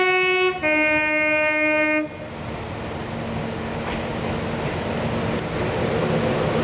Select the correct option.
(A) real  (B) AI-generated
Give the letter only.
A